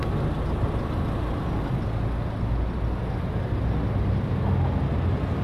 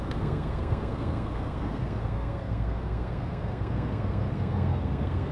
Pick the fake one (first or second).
second